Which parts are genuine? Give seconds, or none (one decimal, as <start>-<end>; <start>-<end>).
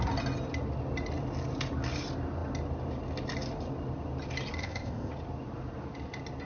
0.0-4.6; 5.1-6.5